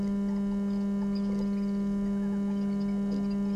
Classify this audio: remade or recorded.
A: recorded